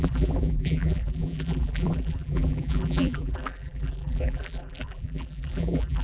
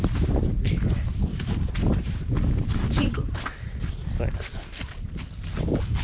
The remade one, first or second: first